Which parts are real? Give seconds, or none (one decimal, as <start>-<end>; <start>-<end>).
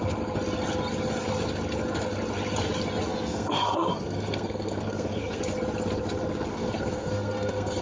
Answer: 0.0-3.1; 5.4-6.5